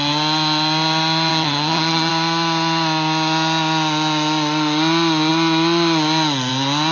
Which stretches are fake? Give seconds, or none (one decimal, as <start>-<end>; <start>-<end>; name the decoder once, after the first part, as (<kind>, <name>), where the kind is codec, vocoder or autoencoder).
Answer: 1.3-2.1 (vocoder, HiFi-GAN)

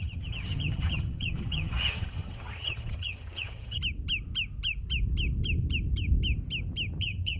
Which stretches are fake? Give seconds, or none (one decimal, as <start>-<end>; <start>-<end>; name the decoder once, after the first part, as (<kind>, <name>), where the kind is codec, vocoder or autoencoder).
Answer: 0.0-3.8 (vocoder, HiFi-GAN); 7.0-7.4

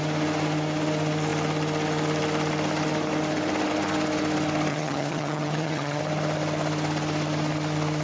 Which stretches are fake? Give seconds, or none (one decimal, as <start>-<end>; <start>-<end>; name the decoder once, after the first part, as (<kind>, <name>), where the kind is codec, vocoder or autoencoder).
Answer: 4.7-6.0 (vocoder, HiFi-GAN)

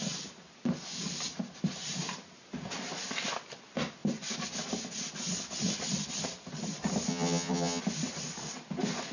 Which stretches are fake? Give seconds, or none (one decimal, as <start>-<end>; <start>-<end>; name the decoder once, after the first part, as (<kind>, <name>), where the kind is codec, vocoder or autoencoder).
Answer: 7.1-7.8 (vocoder, HiFi-GAN)

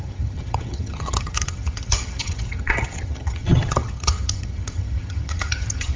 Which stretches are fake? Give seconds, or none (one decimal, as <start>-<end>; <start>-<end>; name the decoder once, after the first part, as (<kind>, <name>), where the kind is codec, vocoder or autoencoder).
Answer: 0.0-6.0 (vocoder, HiFi-GAN)

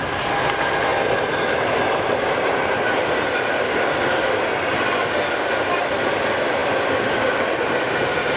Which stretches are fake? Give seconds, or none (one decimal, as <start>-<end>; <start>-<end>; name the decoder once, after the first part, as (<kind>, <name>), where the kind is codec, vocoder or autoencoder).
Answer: none

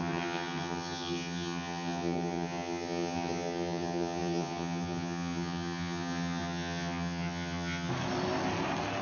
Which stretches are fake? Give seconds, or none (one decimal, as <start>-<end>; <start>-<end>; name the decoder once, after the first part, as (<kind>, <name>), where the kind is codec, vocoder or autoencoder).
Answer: 0.0-7.9 (vocoder, HiFi-GAN)

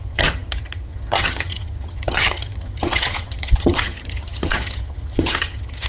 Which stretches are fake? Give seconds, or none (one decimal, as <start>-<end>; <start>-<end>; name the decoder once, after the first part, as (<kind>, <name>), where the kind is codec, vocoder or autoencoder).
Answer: 0.0-5.9 (vocoder, HiFi-GAN)